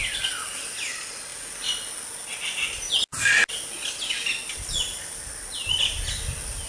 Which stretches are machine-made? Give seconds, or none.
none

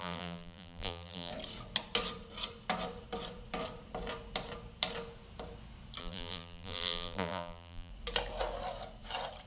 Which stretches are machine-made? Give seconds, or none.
0.0-1.3 (vocoder, BigVGAN v2); 6.0-7.9

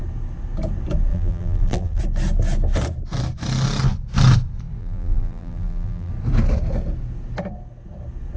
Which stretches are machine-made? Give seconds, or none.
1.1-2.0 (vocoder, BigVGAN v2); 4.8-6.1

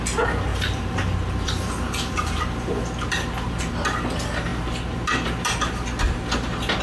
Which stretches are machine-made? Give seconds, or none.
0.5-2.7 (vocoder, BigVGAN v2)

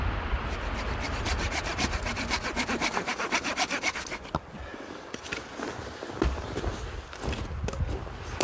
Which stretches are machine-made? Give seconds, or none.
3.1-3.9 (vocoder, BigVGAN v2); 4.7-5.3